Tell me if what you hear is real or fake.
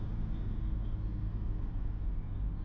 real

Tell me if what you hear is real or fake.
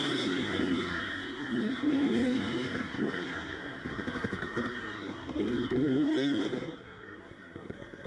fake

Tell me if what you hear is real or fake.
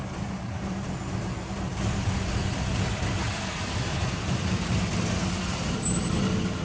real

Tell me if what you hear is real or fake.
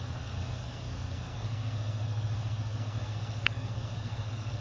fake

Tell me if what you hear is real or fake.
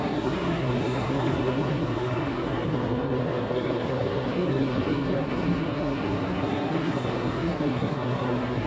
fake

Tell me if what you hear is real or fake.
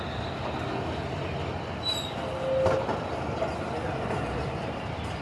real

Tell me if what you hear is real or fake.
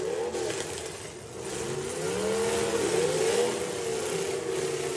real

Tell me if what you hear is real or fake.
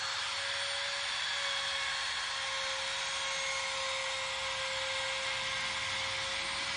real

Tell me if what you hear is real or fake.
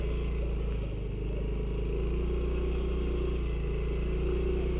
real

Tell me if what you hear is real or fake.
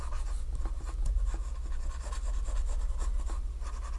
real